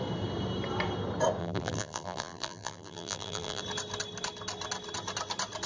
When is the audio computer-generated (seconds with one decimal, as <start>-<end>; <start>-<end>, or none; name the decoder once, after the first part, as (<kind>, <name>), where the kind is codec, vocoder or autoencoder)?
1.4-3.6 (vocoder, BigVGAN v2)